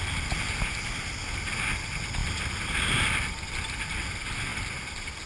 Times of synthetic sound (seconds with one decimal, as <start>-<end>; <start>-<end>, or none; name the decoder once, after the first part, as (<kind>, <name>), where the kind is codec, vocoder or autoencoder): none